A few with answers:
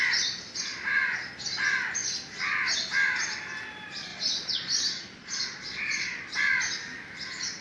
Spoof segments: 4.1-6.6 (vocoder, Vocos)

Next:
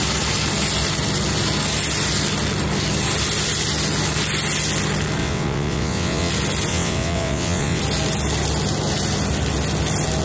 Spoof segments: 5.2-6.3 (vocoder, WaveNeXt); 6.7-7.8

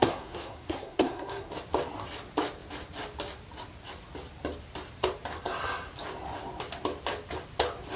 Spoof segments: 0.0-1.5 (codec, SNAC)

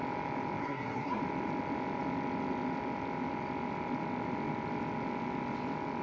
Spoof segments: 0.6-1.2 (codec, SNAC)

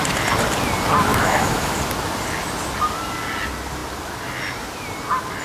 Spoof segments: 1.1-1.8 (autoencoder, DAC-VAE)

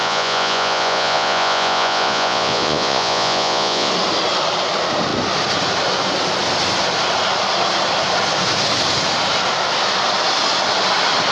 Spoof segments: 0.0-3.9 (vocoder, Vocos)

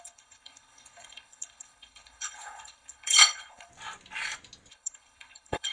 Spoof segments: 0.0-3.7 (codec, HILCodec); 4.7-5.7